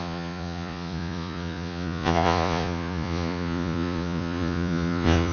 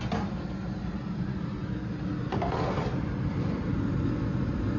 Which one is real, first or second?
second